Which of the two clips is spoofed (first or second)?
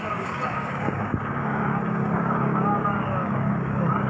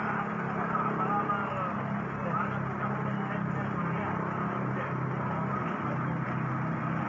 first